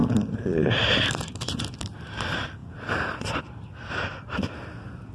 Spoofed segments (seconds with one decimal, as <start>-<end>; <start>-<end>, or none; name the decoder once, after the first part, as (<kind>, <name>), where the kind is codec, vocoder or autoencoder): 0.0-1.3 (vocoder, BigVGAN v2); 2.6-3.4